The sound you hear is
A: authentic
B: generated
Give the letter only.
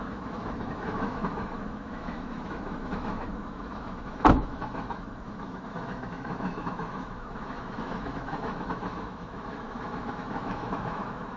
B